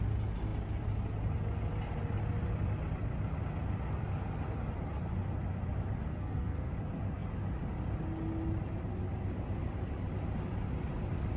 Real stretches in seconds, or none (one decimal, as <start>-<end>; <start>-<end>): 0.0-6.1; 6.7-11.4